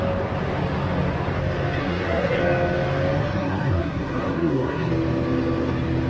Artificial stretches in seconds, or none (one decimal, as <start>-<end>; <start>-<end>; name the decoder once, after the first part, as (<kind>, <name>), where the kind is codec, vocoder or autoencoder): 1.8-2.4 (codec, SNAC); 3.2-4.9